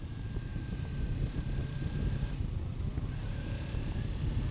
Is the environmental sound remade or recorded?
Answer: remade